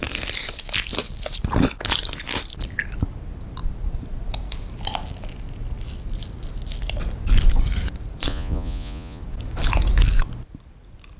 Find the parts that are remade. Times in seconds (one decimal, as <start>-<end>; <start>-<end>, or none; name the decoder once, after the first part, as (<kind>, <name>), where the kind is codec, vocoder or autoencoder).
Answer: 8.3-9.2 (vocoder, Vocos)